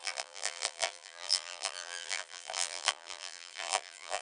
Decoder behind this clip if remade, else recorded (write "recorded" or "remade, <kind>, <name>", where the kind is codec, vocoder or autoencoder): remade, vocoder, BigVGAN v2